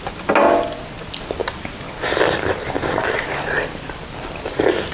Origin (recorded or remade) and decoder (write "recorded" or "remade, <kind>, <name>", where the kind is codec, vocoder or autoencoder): recorded